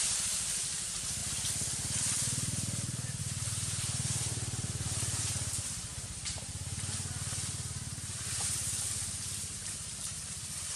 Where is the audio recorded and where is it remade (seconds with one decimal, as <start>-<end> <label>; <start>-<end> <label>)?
0.0-1.2 remade; 1.2-3.2 recorded; 3.2-10.8 remade